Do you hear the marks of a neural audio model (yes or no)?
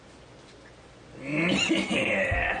no